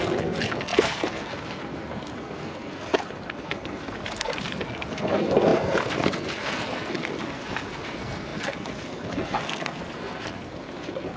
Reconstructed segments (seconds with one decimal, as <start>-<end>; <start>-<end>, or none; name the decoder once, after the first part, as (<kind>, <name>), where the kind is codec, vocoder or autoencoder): 0.0-11.2 (codec, SNAC)